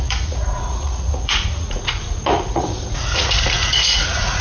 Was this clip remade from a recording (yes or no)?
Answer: yes